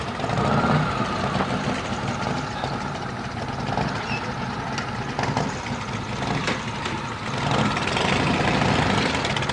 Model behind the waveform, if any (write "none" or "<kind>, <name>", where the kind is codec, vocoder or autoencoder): none